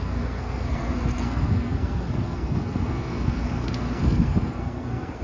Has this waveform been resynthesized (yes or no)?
yes